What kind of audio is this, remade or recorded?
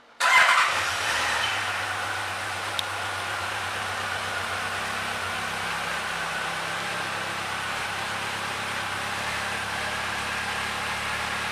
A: recorded